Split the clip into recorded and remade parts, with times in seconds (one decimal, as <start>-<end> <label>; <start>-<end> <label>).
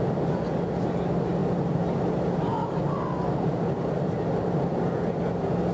0.0-5.7 recorded